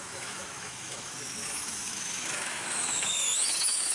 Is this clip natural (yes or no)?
no